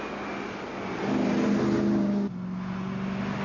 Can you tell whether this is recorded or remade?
recorded